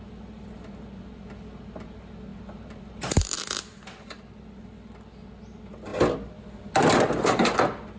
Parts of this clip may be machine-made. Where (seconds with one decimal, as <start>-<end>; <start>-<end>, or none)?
none